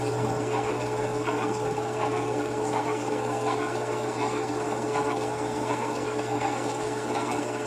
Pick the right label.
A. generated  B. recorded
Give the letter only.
A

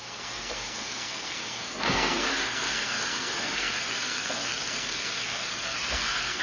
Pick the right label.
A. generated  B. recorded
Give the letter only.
A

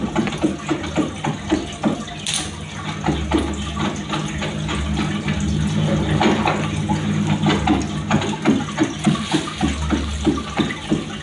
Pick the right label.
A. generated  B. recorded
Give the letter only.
B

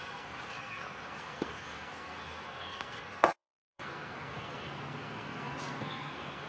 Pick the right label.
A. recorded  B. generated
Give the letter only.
B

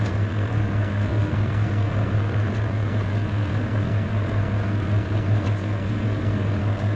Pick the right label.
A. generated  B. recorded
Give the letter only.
A